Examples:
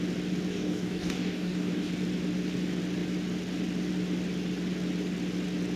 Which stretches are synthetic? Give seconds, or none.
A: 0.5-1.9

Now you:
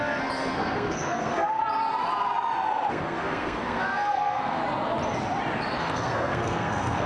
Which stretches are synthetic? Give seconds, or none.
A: 0.0-1.6; 2.9-4.6; 5.8-7.1

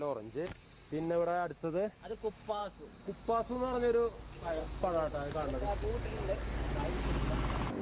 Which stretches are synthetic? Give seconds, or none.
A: none